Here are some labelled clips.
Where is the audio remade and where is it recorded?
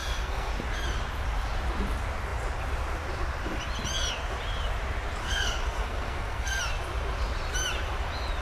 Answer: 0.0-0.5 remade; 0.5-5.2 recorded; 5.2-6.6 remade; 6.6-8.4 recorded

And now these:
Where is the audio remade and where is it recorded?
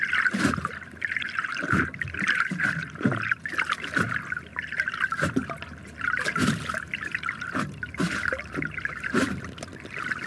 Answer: 0.0-10.3 recorded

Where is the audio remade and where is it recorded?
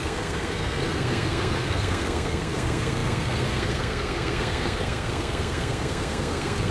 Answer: 0.0-6.7 remade